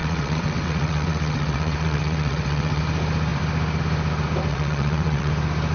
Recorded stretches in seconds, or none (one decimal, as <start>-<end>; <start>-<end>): 2.8-4.5; 5.3-5.7